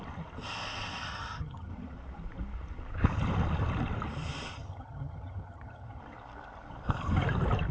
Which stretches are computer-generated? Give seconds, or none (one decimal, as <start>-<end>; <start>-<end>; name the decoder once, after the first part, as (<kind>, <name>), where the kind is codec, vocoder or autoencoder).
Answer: 1.1-1.7 (vocoder, HiFi-GAN); 4.5-6.0